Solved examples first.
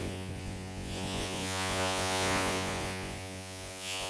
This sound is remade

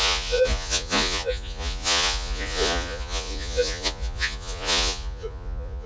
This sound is remade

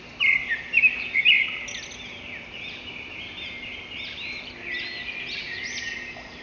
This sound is recorded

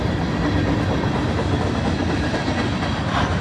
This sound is recorded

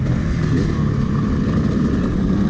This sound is recorded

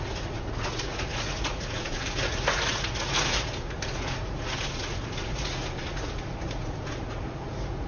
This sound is remade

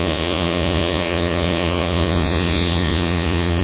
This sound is remade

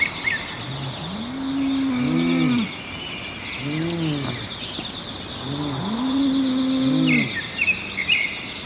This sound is recorded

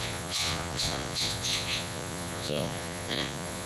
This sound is remade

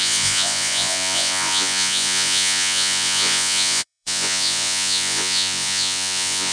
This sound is remade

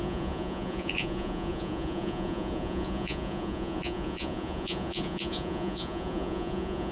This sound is remade